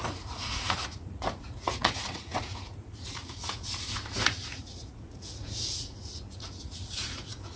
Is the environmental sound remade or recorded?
remade